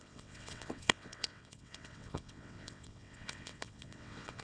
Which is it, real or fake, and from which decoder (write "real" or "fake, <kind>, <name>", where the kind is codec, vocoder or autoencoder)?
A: fake, vocoder, WaveNeXt